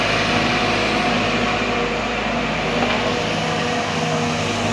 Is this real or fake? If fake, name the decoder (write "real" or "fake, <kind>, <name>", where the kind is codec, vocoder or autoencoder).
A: real